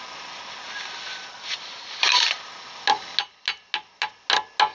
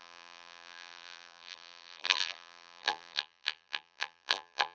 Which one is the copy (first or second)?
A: second